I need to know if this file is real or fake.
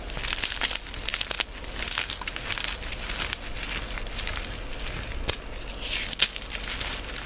real